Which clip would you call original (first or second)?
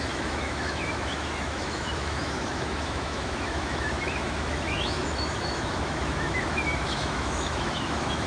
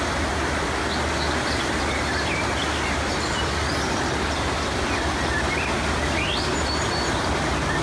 second